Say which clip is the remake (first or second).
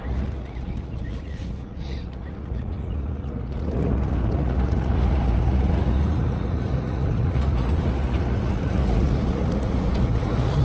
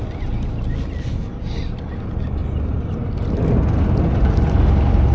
first